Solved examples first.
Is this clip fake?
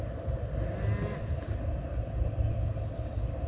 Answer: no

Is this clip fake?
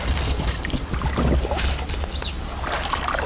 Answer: no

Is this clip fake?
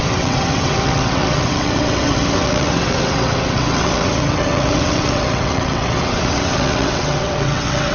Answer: yes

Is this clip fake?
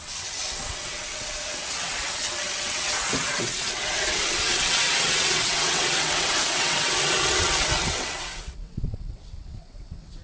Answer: yes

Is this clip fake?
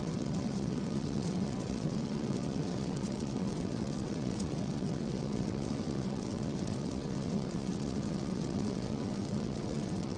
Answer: yes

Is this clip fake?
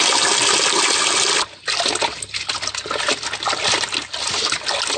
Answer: no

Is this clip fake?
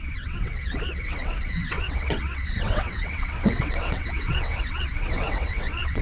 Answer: yes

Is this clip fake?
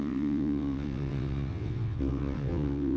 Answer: yes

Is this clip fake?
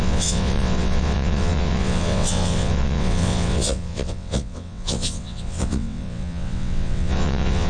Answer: yes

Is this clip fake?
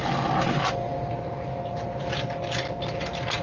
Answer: no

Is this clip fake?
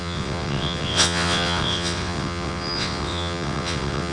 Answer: yes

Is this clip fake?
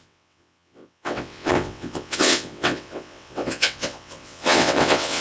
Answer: yes